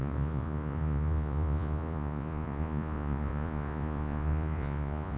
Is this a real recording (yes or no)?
no